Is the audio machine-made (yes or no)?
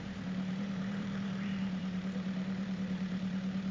yes